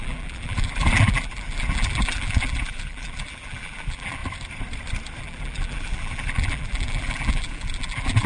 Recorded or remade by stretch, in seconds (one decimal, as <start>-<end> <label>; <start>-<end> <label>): 0.0-4.2 remade; 4.2-5.2 recorded; 5.2-8.3 remade